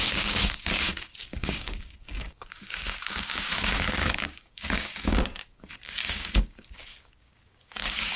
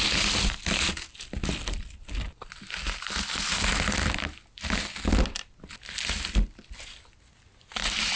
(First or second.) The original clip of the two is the second